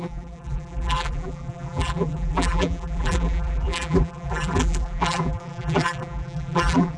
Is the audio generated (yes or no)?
yes